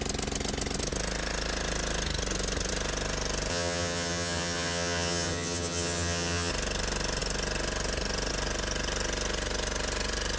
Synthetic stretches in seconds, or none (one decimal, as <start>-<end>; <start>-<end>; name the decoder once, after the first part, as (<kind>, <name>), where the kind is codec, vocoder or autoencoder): 3.5-6.5 (vocoder, HiFi-GAN)